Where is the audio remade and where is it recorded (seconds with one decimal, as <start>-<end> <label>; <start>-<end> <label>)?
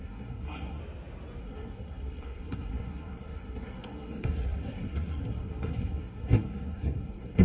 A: 0.0-0.8 remade; 0.8-1.4 recorded; 1.4-7.4 remade